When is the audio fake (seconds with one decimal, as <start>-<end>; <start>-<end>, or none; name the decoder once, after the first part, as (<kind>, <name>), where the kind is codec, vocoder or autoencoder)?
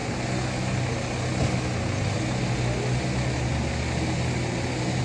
none